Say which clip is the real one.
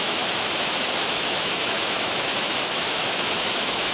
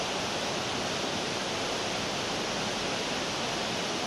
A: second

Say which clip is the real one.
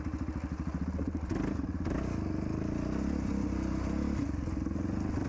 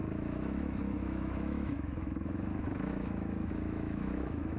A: first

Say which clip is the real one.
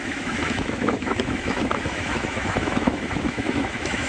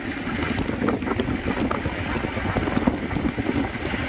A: second